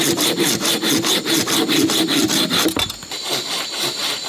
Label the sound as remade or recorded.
recorded